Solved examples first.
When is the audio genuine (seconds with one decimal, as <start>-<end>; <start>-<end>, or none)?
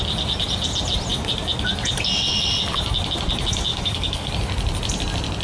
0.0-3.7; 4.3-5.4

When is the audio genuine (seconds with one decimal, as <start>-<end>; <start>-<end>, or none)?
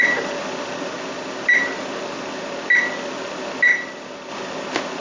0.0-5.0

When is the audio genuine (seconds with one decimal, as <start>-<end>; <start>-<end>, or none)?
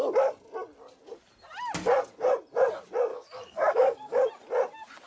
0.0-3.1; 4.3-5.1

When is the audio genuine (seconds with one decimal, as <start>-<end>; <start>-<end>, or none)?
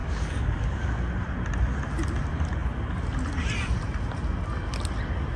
1.1-5.4